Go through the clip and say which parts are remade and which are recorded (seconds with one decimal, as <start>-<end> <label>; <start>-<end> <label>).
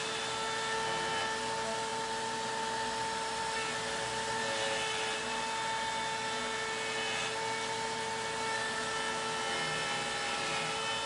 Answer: 0.0-11.1 recorded